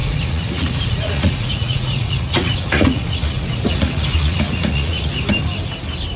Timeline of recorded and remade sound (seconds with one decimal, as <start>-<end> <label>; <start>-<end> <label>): 0.0-5.1 remade; 5.1-6.2 recorded